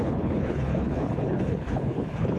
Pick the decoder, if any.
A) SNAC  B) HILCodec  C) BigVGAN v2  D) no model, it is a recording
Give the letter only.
B